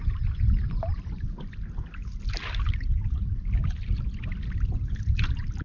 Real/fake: real